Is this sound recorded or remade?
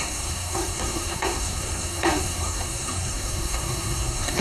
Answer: remade